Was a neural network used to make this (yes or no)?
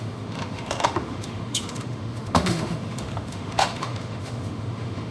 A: yes